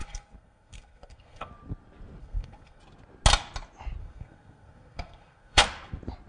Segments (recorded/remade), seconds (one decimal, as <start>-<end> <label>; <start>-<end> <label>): 0.0-1.5 remade; 1.5-2.2 recorded; 2.2-2.8 remade; 2.8-4.0 recorded; 4.0-5.6 remade; 5.6-6.3 recorded